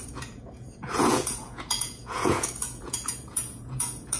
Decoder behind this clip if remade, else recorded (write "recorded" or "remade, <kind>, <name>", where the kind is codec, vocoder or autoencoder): remade, vocoder, Vocos